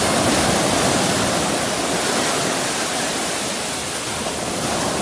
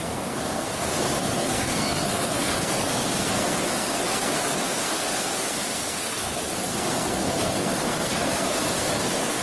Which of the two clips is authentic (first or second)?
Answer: first